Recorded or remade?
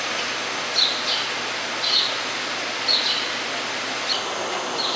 recorded